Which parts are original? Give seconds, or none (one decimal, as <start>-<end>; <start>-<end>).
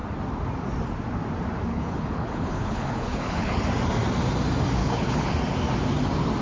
0.0-1.7; 3.6-4.8; 5.3-6.4